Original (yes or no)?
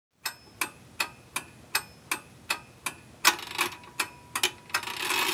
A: yes